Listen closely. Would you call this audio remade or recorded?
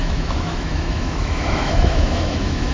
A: remade